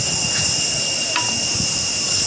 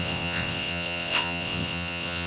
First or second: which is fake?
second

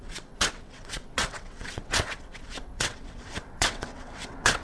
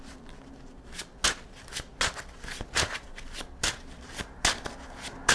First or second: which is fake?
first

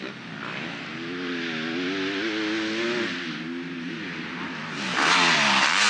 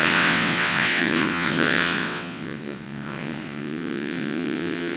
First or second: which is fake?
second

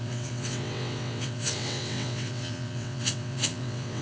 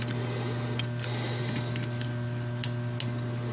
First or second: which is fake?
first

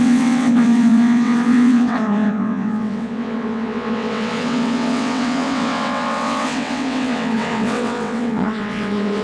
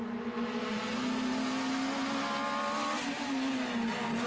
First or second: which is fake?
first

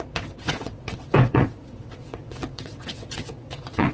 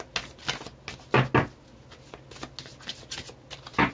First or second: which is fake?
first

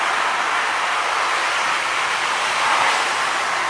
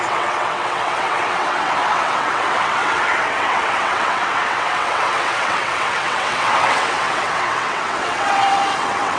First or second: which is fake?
second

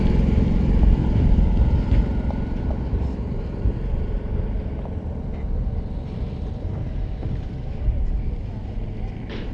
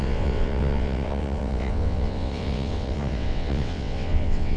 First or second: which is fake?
second